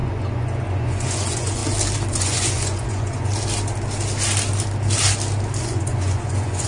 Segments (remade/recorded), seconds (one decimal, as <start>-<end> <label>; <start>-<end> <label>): 0.0-1.6 remade; 1.6-2.1 recorded; 2.1-3.3 remade; 3.3-5.6 recorded; 5.6-6.7 remade